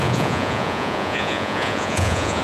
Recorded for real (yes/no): no